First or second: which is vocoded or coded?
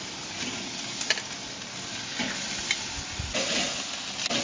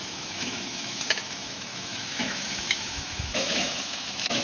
second